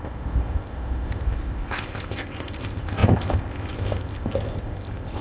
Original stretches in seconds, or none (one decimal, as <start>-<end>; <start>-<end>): none